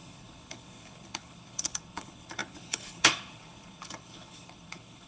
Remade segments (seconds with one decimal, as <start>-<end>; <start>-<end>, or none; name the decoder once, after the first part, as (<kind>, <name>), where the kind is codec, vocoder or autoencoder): 0.0-5.1 (codec, HILCodec)